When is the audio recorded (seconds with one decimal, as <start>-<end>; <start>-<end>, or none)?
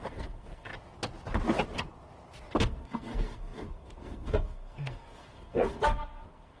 0.7-2.6